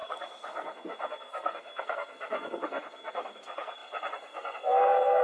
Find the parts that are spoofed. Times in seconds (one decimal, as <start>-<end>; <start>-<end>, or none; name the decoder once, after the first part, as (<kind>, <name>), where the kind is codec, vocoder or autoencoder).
0.0-5.2 (codec, SNAC)